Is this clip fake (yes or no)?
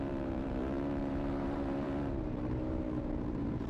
yes